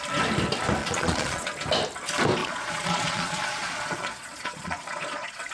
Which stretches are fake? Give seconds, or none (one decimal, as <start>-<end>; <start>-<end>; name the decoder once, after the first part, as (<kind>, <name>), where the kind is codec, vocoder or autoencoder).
0.8-1.5 (vocoder, Vocos); 2.4-5.5